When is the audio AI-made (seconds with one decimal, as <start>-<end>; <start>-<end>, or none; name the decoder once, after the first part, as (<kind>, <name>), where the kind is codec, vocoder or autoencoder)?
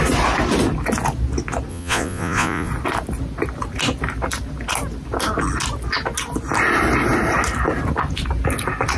1.7-2.7 (vocoder, Vocos)